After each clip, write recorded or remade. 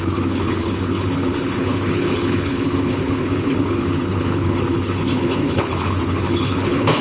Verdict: remade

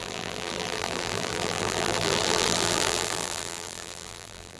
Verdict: remade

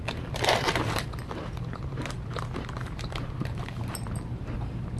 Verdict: remade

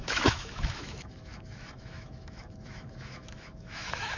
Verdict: remade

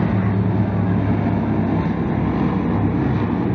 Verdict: recorded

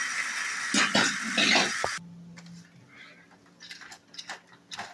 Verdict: recorded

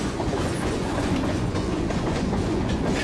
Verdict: remade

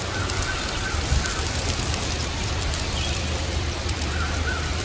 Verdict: remade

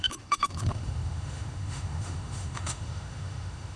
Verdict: remade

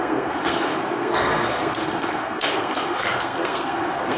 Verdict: remade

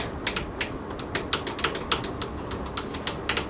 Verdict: recorded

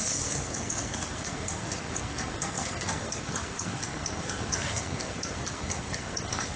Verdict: remade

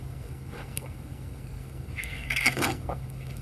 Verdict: remade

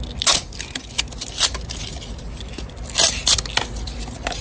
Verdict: recorded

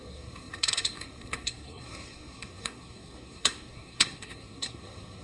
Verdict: remade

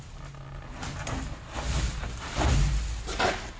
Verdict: recorded